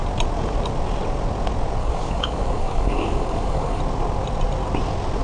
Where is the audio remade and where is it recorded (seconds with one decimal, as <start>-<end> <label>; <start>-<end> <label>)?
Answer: 0.0-1.8 recorded; 1.8-3.8 remade; 3.8-5.2 recorded